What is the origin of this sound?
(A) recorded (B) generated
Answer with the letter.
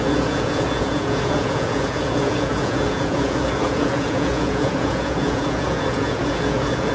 B